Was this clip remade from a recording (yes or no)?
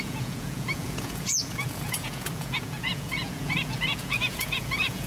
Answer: yes